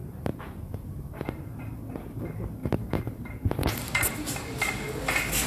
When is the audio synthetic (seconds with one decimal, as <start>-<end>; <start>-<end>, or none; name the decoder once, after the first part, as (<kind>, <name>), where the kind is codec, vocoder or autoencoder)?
0.0-1.8 (vocoder, BigVGAN v2); 2.6-4.6